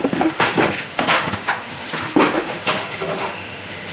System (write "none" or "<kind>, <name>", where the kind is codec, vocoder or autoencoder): autoencoder, DAC-VAE